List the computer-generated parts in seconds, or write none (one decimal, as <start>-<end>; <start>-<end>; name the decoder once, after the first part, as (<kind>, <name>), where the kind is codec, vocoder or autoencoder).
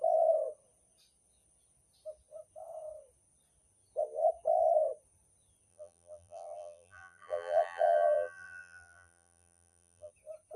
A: 5.7-10.1 (vocoder, BigVGAN v2)